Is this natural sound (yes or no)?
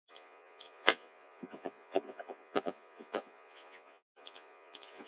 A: no